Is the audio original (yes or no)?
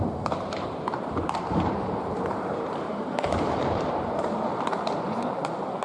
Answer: no